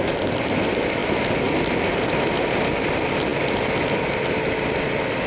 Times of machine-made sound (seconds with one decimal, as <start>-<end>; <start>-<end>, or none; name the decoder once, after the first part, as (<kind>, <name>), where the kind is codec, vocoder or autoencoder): none